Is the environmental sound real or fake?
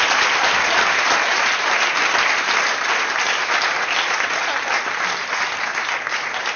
real